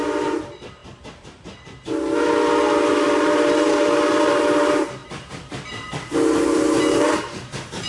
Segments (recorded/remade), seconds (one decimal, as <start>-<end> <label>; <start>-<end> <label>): 0.0-0.8 remade; 0.8-2.9 recorded; 2.9-7.9 remade